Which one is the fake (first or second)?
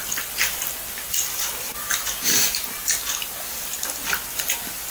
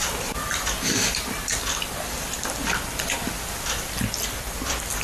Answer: second